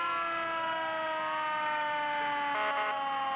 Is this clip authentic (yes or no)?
yes